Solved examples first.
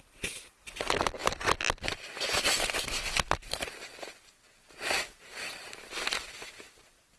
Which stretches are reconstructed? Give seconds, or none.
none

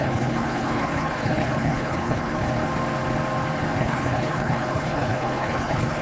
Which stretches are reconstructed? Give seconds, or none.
0.0-2.4 (codec, HILCodec); 3.8-6.0

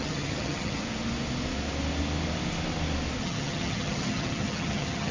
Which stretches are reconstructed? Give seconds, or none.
0.0-0.8 (vocoder, HiFi-GAN); 3.2-5.1

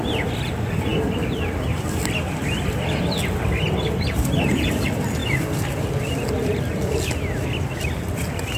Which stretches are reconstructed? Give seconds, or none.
0.9-3.0 (vocoder, BigVGAN v2); 5.2-6.6

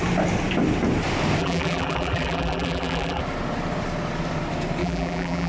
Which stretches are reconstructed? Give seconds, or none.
1.4-3.2 (vocoder, BigVGAN v2); 4.8-5.5

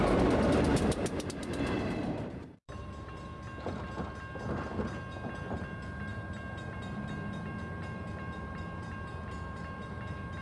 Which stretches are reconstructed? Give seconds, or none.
0.0-0.7 (vocoder, BigVGAN v2); 1.8-3.3; 5.5-10.4